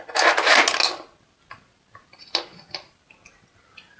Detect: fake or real real